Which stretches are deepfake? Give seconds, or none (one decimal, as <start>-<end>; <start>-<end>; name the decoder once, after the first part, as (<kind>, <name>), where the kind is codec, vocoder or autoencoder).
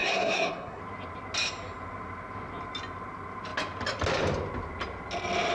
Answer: 0.0-0.8 (codec, SNAC)